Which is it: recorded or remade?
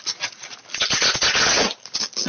recorded